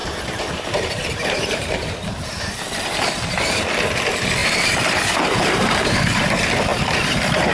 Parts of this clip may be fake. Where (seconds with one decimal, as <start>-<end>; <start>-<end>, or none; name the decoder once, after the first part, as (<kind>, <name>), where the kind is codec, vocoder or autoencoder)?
0.0-2.5 (vocoder, BigVGAN v2); 4.4-6.2